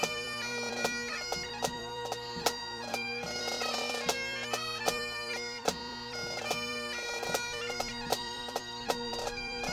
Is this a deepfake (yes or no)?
yes